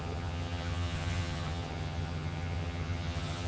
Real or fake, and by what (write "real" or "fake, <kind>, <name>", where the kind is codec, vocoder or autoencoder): fake, vocoder, HiFi-GAN